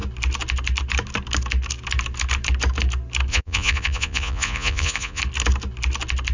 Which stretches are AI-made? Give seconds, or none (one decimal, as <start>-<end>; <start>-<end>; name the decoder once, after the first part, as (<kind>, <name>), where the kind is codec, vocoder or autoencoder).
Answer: 3.3-5.2 (vocoder, Vocos)